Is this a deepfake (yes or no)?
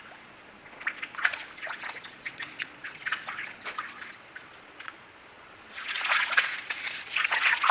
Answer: yes